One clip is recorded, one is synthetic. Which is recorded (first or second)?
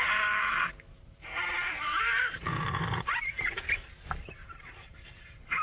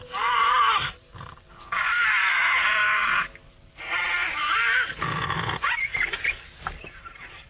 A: second